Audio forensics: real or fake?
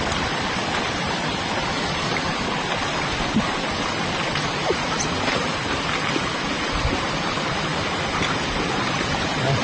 real